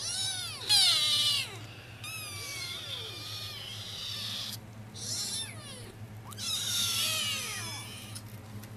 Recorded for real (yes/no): yes